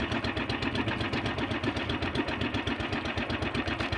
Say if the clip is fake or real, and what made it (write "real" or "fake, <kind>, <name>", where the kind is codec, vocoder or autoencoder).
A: real